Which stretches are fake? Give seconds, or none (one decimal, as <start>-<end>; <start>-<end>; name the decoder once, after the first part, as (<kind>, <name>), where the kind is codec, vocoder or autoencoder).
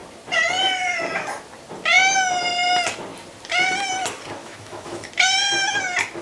4.4-5.1 (autoencoder, DAC-VAE)